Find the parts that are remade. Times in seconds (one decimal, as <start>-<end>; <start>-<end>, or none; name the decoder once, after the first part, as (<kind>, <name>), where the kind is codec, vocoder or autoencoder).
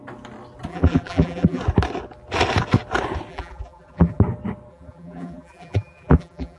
0.7-1.6 (vocoder, BigVGAN v2); 3.3-4.2; 4.7-6.6